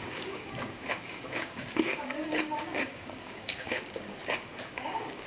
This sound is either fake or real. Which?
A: fake